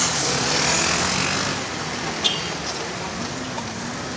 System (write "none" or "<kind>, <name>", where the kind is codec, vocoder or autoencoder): none